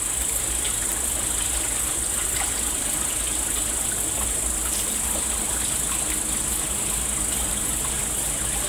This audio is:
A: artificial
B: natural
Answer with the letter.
B